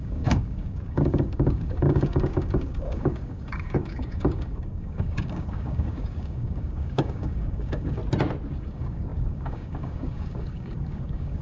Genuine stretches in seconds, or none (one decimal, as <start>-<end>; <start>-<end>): 8.0-8.5